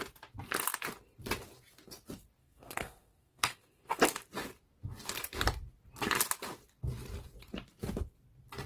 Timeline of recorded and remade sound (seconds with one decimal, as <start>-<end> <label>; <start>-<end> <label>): 0.0-2.4 recorded; 2.4-4.0 remade; 4.0-8.7 recorded